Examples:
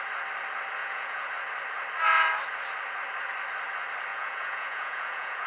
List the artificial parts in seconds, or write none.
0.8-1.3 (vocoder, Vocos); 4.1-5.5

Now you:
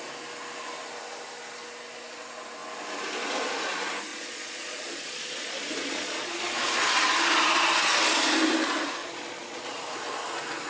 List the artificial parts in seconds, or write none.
4.1-6.4 (vocoder, Vocos); 9.0-9.8

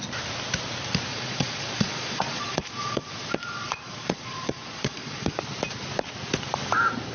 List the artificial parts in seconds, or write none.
1.1-5.4 (vocoder, Vocos)

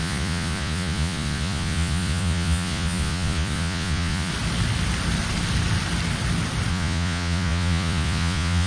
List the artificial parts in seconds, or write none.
0.0-4.3 (vocoder, Vocos); 6.7-8.7

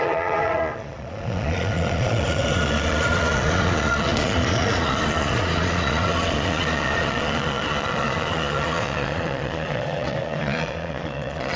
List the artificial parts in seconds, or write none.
0.0-11.6 (vocoder, Vocos)

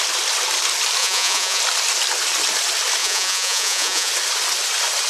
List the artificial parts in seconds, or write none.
1.0-1.6 (vocoder, Vocos); 3.0-4.1